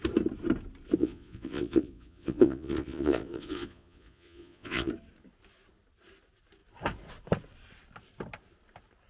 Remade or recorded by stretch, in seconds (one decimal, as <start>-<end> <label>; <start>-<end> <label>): 0.0-1.0 recorded; 1.0-4.9 remade; 4.9-9.1 recorded